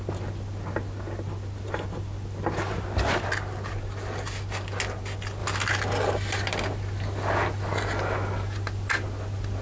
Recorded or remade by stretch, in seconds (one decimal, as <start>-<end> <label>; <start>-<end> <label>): 0.0-9.6 recorded